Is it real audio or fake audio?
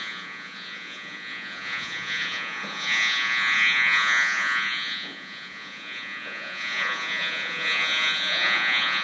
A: fake